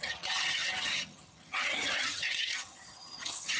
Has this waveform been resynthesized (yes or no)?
yes